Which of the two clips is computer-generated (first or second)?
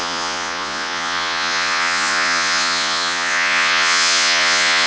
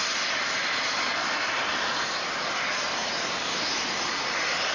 first